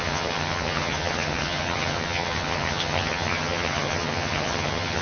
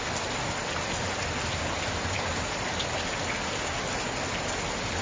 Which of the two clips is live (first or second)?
second